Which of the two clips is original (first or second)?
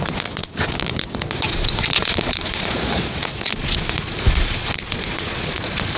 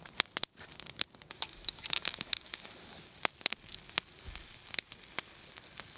second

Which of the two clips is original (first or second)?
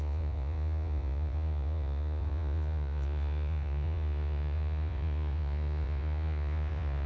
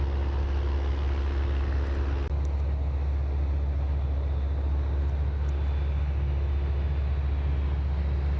second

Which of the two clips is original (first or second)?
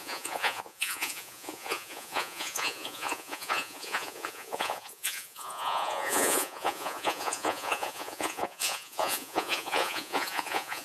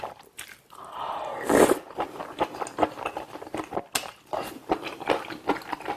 second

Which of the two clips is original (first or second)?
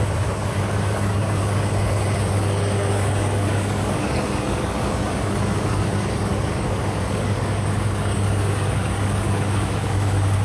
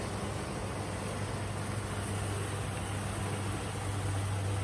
second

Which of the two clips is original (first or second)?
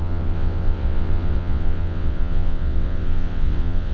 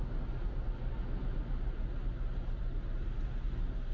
second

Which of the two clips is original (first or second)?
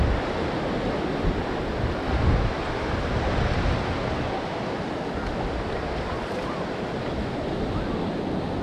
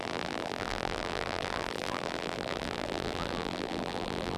first